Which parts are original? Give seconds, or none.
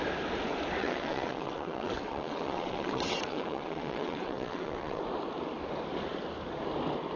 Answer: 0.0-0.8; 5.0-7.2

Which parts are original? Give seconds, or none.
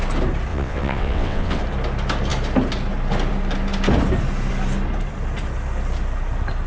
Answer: 0.0-0.5; 1.6-6.7